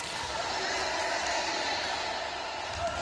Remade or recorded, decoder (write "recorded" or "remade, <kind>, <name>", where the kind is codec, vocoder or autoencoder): recorded